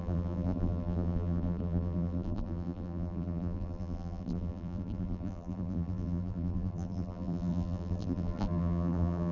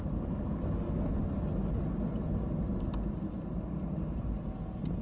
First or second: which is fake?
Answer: first